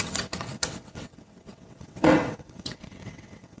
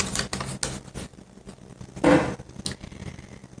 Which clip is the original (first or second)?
second